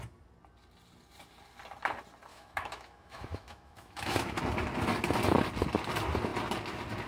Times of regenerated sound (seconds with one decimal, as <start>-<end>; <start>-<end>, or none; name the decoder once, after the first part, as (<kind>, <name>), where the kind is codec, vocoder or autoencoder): 2.3-4.4 (autoencoder, DAC-VAE)